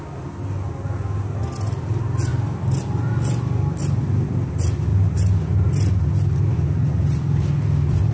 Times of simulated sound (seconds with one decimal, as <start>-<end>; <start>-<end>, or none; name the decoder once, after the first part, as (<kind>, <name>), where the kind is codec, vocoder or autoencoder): none